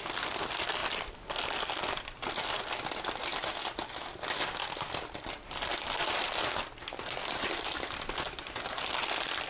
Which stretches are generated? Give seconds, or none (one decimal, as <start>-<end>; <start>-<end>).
0.8-1.7